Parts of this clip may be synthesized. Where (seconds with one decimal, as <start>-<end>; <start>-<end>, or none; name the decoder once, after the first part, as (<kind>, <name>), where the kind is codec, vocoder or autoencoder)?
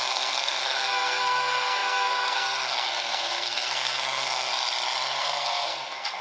0.0-4.5 (codec, SNAC); 5.2-6.2